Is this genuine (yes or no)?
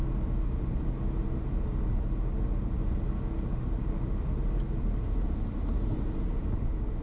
yes